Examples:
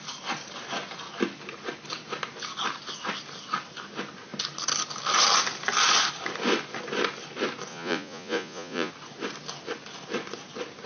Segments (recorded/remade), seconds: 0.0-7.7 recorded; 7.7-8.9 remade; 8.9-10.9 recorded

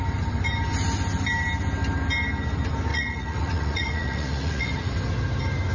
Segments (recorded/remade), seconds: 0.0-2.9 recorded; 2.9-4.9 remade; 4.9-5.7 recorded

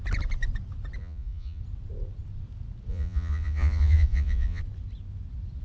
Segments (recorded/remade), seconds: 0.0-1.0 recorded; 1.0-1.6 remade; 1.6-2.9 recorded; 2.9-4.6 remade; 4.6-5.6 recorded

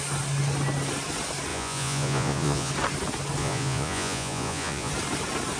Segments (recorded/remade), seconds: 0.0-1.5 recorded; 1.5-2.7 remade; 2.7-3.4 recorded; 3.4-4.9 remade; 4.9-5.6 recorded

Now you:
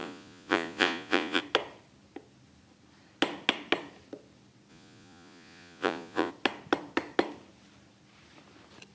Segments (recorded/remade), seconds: 0.0-1.4 remade; 1.4-4.7 recorded; 4.7-6.3 remade; 6.3-8.9 recorded

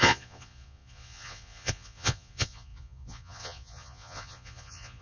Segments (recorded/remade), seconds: 0.0-5.0 remade

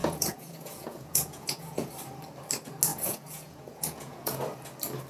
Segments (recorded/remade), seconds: 0.0-1.9 remade; 1.9-2.9 recorded; 2.9-4.4 remade; 4.4-5.1 recorded